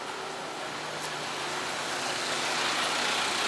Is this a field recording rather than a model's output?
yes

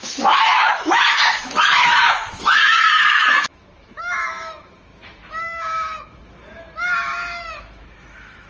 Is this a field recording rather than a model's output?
no